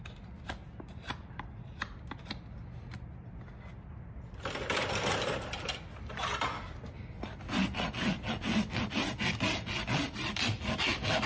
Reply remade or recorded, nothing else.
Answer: recorded